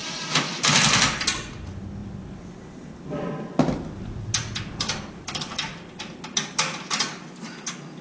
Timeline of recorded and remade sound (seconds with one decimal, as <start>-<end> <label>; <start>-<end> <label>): 0.0-0.7 remade; 0.7-8.0 recorded